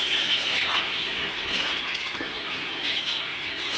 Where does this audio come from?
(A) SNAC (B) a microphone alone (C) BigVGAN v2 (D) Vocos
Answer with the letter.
A